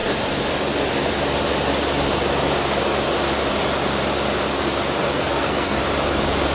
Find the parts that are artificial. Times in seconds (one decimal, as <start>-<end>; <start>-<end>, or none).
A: 5.1-5.8